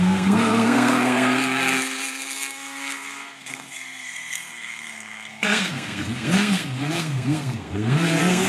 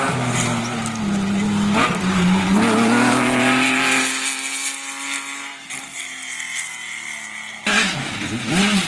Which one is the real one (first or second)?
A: second